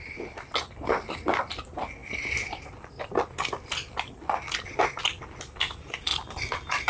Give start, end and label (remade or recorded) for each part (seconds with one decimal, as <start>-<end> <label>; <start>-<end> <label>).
0.0-6.9 recorded